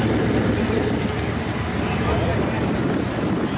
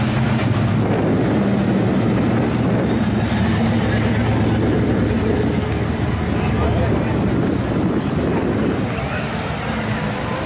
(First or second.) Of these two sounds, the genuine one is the second